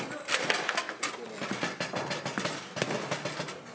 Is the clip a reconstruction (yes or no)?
no